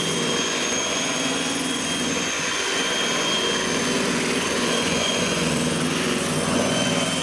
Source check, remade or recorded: remade